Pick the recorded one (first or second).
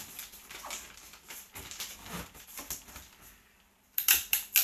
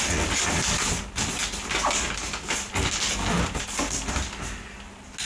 second